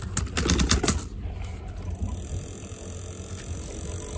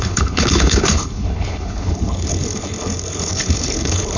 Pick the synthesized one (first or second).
second